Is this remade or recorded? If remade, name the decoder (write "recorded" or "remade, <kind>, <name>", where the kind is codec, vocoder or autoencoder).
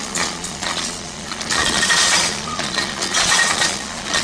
remade, vocoder, Vocos